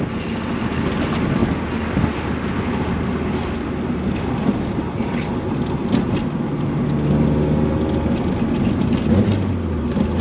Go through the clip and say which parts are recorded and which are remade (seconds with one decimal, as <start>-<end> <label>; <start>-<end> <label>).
0.0-1.4 recorded; 1.4-4.1 remade; 4.1-10.2 recorded